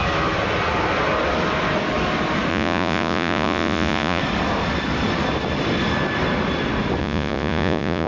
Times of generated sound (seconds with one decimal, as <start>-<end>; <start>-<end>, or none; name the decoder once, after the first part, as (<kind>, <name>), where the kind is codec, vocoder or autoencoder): 2.5-4.2 (vocoder, Vocos); 7.0-8.1